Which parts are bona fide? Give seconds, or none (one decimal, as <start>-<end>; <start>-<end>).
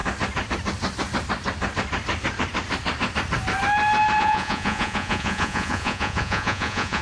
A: 0.0-4.2